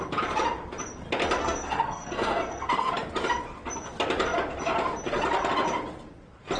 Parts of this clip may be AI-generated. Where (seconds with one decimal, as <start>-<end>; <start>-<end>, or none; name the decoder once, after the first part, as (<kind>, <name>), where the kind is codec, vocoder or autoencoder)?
1.4-2.9 (codec, SNAC)